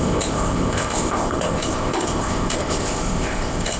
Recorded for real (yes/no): no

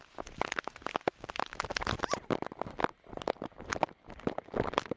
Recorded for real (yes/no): yes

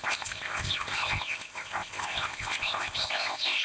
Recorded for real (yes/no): no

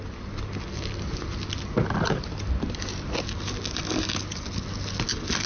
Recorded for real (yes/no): yes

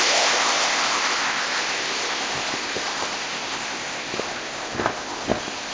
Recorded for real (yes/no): no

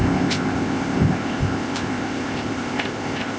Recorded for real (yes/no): no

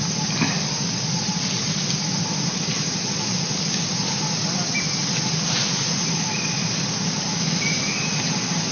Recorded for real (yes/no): yes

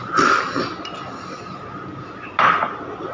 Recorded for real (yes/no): yes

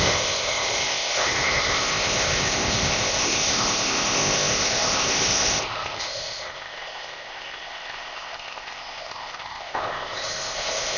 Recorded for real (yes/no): no